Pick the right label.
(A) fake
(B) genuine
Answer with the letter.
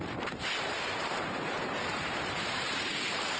A